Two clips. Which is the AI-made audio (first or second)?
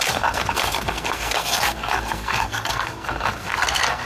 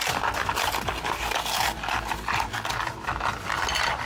first